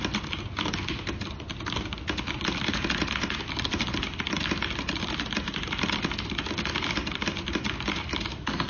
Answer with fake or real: real